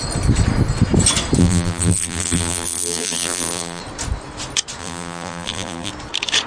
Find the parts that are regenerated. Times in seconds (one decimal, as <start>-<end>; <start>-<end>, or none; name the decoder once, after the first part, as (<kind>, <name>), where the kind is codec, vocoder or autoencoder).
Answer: 1.4-3.8 (vocoder, BigVGAN v2); 4.8-5.9